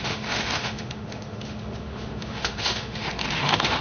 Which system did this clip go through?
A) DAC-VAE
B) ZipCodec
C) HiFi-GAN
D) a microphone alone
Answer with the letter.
A